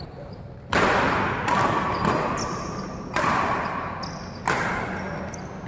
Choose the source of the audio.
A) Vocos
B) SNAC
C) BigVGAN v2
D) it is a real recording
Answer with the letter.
D